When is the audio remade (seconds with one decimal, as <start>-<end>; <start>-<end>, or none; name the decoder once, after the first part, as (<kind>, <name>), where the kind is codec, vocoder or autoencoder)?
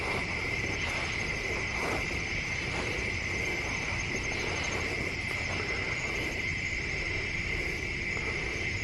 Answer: none